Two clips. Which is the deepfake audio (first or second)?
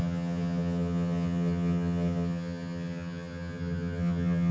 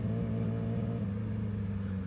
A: first